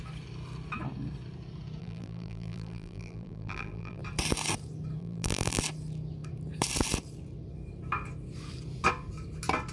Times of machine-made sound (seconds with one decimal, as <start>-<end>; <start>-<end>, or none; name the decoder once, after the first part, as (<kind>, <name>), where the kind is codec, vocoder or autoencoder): 1.8-4.0 (vocoder, BigVGAN v2); 5.0-5.6